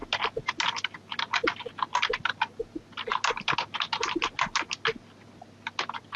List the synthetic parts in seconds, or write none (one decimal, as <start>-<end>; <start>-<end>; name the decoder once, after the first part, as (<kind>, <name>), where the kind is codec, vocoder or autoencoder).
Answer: none